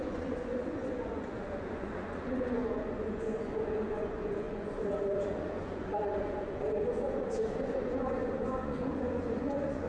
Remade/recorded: remade